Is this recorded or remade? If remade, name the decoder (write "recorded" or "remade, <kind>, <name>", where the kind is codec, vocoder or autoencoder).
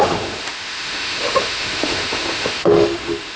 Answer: remade, autoencoder, DAC-VAE